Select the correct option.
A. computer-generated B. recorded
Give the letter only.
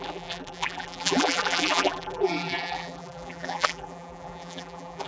A